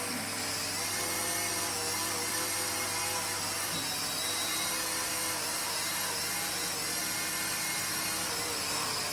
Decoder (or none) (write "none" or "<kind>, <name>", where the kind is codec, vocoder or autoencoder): none